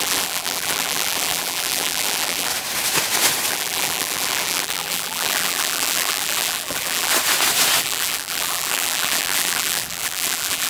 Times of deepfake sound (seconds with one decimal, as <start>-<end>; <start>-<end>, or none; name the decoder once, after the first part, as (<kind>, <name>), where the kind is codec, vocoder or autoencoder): 0.0-2.5 (vocoder, BigVGAN v2); 3.5-7.1; 7.8-10.7